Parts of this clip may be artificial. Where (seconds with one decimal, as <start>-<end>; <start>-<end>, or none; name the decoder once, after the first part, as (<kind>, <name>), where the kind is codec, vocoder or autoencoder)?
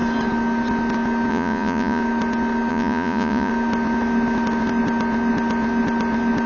1.3-2.0 (vocoder, Vocos); 2.7-3.5